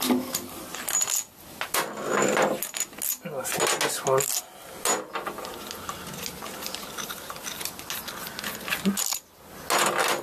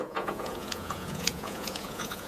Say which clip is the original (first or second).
first